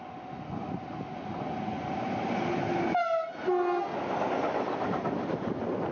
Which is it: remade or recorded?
recorded